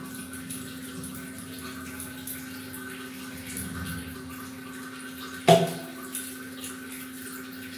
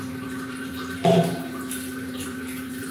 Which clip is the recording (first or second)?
first